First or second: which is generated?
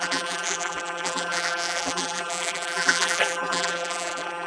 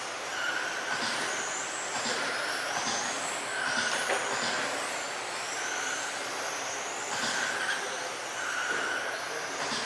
first